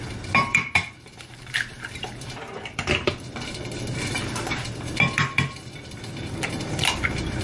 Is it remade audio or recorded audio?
remade